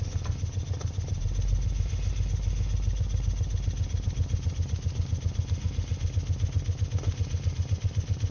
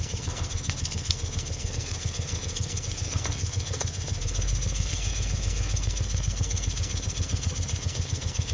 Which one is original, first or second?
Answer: first